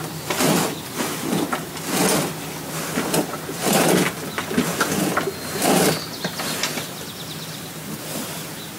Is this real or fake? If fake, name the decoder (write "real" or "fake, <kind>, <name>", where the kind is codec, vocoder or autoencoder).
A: real